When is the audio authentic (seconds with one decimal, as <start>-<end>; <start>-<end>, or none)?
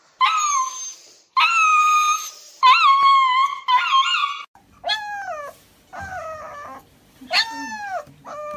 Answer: 0.0-8.6